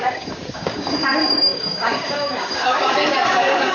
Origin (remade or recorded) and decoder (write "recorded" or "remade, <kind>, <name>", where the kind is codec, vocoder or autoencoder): remade, codec, DAC